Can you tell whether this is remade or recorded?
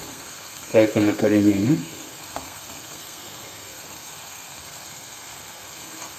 remade